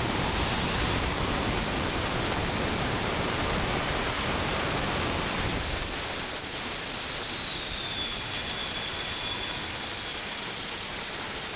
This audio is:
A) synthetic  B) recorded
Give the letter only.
A